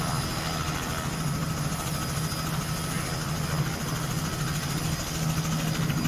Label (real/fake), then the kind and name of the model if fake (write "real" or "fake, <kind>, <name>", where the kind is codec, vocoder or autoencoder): real